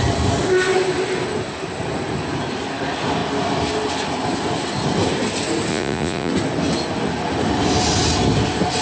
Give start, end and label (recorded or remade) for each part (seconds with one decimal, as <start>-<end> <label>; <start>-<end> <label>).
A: 0.0-5.7 recorded; 5.7-6.3 remade; 6.3-8.8 recorded